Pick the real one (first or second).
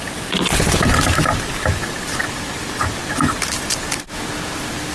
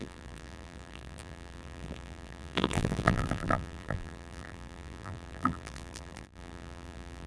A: first